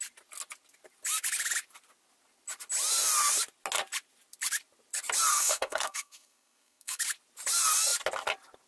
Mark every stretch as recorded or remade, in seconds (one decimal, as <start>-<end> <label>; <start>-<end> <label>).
0.0-5.3 recorded; 5.3-7.0 remade; 7.0-8.7 recorded